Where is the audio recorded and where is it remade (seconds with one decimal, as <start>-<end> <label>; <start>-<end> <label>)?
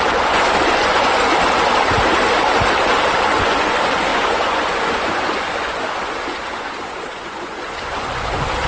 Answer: 0.0-1.3 remade; 1.3-3.4 recorded; 3.4-8.7 remade